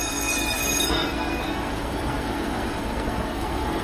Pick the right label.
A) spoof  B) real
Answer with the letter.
A